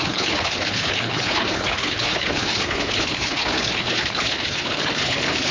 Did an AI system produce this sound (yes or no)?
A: yes